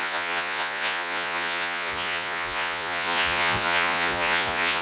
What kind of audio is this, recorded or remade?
remade